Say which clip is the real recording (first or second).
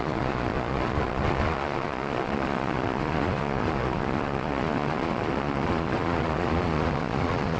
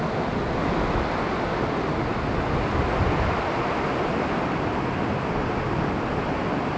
second